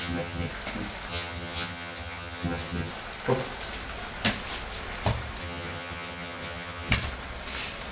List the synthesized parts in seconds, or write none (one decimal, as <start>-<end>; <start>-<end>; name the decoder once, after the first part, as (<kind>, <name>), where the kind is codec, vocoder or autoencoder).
0.0-0.5 (vocoder, HiFi-GAN); 1.1-2.9; 5.4-6.9